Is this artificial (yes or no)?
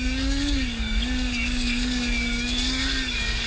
yes